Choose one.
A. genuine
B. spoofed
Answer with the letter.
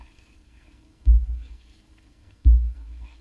B